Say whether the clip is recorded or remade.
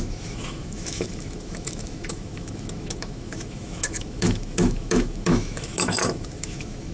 remade